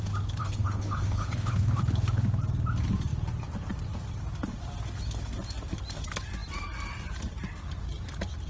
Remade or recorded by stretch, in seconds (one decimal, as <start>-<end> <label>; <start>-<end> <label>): 0.0-0.4 recorded; 0.4-1.8 remade; 1.8-8.5 recorded